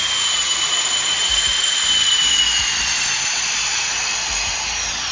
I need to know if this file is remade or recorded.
recorded